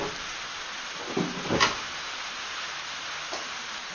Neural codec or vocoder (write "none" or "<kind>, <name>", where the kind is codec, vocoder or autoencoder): none